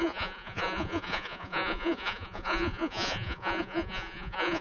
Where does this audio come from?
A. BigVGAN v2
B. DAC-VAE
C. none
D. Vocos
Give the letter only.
D